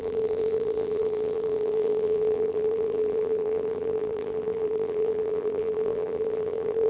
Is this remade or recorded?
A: remade